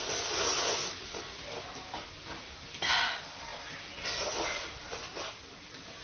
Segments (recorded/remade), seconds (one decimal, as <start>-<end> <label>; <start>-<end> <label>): 0.0-6.0 recorded